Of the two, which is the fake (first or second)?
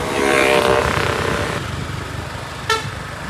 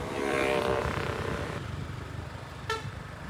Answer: second